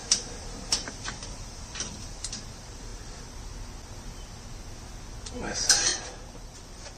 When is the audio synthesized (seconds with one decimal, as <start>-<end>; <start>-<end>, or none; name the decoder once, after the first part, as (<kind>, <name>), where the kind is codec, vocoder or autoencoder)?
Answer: 0.0-2.4 (vocoder, BigVGAN v2); 5.9-7.0